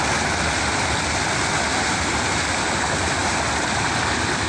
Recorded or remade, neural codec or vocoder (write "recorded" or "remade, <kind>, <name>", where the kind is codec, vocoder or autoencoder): recorded